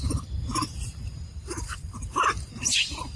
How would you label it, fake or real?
real